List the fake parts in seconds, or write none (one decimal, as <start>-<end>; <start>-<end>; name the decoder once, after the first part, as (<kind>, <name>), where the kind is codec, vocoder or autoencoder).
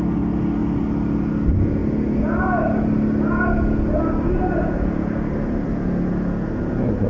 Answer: none